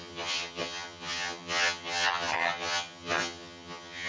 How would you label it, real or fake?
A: fake